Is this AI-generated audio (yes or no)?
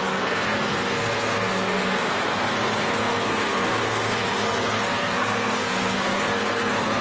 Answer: yes